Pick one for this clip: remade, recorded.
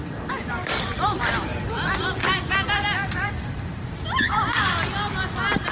remade